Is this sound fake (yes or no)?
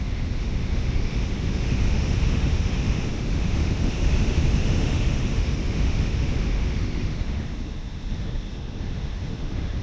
yes